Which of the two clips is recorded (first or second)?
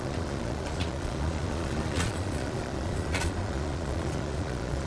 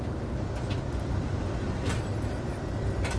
second